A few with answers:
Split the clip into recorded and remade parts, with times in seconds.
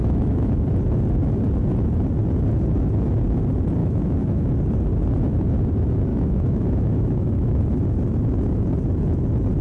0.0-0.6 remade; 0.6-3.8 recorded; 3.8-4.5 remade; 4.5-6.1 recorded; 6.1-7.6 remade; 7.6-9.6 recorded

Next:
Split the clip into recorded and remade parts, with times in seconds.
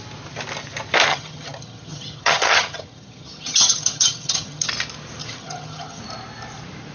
0.0-1.1 recorded; 1.1-4.7 remade; 4.7-5.2 recorded; 5.2-6.0 remade; 6.0-6.9 recorded